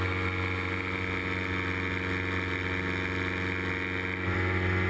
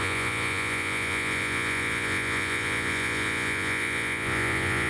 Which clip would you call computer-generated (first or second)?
second